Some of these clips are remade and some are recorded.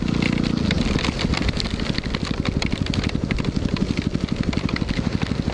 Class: recorded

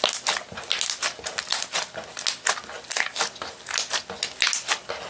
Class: recorded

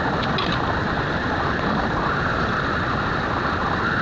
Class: recorded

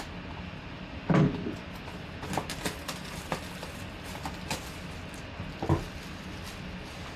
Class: recorded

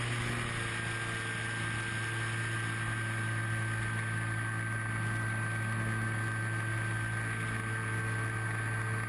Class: recorded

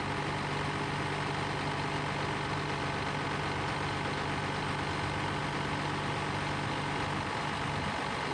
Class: recorded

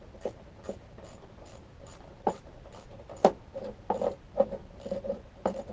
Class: remade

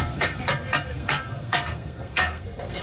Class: remade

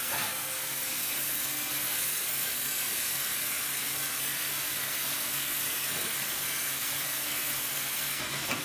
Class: remade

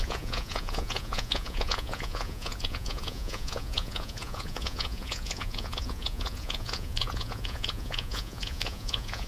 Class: remade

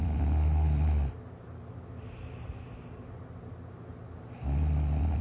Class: recorded